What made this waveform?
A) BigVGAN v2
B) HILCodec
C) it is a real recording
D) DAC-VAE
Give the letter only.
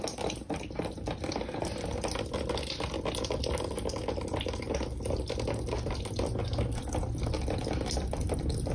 C